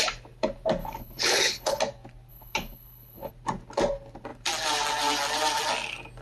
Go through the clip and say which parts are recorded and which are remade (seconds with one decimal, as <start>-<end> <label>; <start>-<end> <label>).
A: 0.0-0.8 recorded; 0.8-1.8 remade; 1.8-2.3 recorded; 2.3-3.3 remade; 3.3-6.2 recorded